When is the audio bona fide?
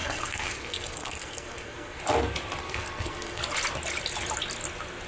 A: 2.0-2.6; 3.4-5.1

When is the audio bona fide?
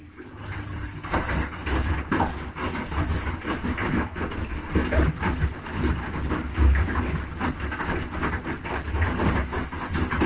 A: 0.0-5.7; 7.2-10.3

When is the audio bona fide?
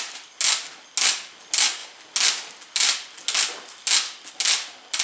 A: 0.0-5.0